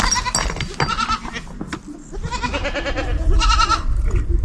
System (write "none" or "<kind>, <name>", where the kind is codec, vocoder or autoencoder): none